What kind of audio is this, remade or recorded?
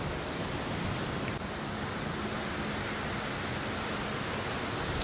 recorded